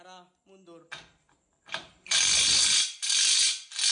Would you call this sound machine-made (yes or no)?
no